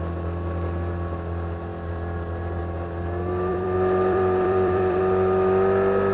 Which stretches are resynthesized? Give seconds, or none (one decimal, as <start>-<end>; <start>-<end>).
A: 1.7-2.6; 3.5-5.0